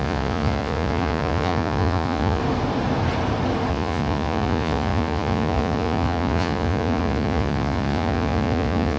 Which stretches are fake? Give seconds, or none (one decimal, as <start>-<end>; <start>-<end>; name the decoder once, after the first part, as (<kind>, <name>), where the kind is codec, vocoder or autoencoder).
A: 0.0-2.4 (vocoder, Vocos); 3.7-9.0